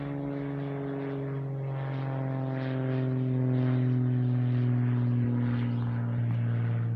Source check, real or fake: real